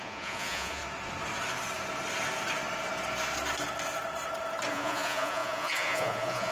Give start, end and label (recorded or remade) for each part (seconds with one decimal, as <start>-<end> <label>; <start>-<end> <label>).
0.0-0.8 remade; 0.8-4.7 recorded; 4.7-6.5 remade